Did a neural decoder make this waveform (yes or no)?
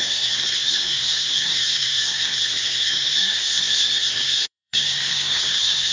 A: yes